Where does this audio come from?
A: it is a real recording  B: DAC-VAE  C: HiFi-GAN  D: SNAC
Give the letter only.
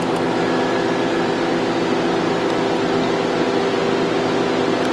A